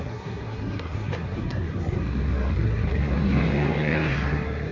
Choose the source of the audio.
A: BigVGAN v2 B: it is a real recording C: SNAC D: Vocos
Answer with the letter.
C